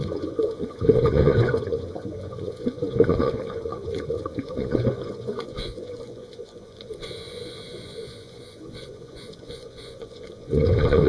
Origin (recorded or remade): remade